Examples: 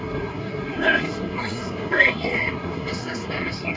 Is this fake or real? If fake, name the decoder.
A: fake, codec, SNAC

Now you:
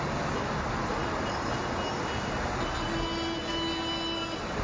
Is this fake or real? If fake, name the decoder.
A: real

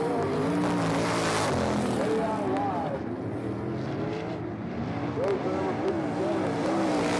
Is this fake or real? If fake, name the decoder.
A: real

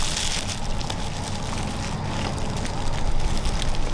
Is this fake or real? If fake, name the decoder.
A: real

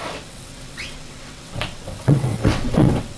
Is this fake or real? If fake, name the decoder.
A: fake, vocoder, WaveNeXt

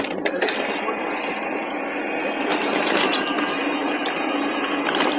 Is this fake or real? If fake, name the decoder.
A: real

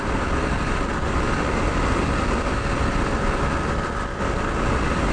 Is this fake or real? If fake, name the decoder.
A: real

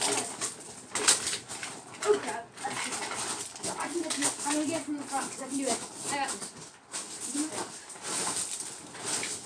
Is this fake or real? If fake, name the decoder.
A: real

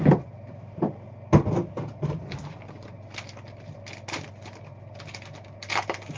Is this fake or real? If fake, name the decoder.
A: real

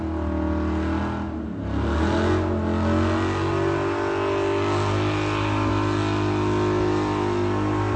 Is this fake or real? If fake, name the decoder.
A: real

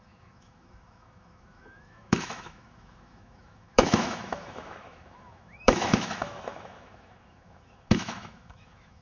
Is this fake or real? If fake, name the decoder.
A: fake, autoencoder, DAC-VAE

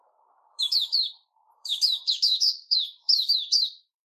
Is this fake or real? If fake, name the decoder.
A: fake, autoencoder, DAC-VAE